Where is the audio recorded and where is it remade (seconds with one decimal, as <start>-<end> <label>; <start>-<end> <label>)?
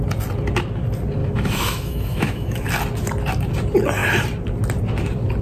0.0-1.2 recorded; 1.2-2.7 remade; 2.7-5.4 recorded